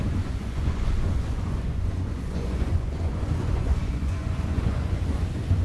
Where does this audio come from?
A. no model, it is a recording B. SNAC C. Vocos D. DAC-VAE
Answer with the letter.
C